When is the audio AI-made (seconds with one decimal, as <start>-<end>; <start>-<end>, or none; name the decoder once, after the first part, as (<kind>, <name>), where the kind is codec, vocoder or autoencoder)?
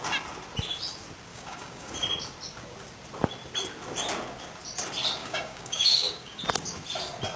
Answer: 1.3-1.9 (codec, DAC); 5.2-6.4